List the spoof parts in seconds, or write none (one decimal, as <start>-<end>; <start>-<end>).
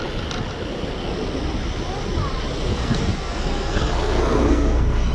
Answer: 2.7-5.1